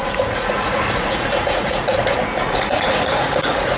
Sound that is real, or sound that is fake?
fake